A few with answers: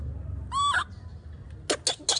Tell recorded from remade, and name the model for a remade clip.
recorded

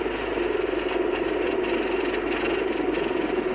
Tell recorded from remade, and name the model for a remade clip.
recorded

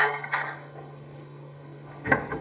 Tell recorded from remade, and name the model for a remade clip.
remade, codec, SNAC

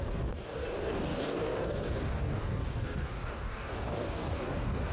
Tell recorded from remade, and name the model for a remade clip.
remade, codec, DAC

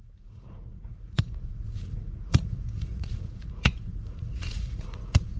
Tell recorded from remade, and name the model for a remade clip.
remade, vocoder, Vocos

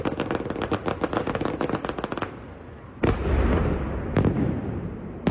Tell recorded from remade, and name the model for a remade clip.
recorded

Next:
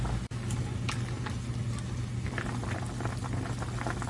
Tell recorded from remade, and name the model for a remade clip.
recorded